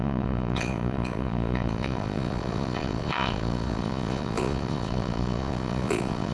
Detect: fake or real fake